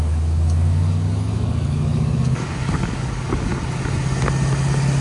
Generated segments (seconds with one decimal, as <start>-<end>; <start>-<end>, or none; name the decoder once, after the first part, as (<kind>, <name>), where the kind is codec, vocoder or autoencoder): 0.0-3.5 (codec, DAC)